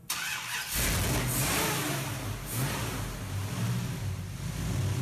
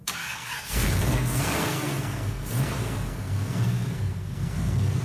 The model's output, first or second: second